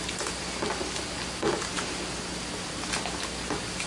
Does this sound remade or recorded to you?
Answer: recorded